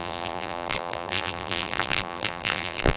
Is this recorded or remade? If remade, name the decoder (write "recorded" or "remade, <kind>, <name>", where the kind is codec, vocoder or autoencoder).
remade, vocoder, BigVGAN v2